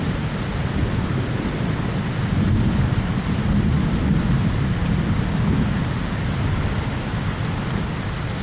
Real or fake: real